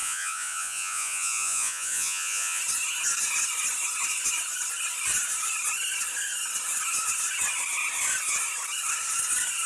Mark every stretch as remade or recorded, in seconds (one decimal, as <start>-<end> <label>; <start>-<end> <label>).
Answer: 0.0-2.6 remade; 2.6-9.7 recorded